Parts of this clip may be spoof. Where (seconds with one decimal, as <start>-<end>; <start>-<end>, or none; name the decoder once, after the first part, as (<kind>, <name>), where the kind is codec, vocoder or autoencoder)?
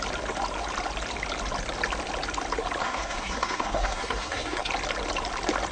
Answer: 2.8-4.7 (codec, SNAC)